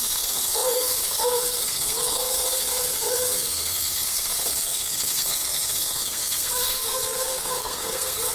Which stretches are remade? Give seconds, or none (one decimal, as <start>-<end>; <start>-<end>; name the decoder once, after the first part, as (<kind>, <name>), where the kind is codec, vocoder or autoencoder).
0.0-8.3 (codec, SNAC)